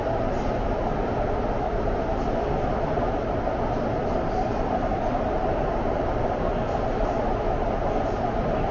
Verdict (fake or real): real